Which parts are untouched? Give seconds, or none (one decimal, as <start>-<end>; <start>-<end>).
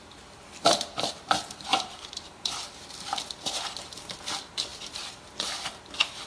none